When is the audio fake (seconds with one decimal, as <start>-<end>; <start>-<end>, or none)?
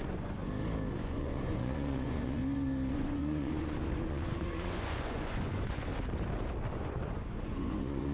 0.0-0.4; 0.9-2.4; 2.9-5.9; 6.7-8.1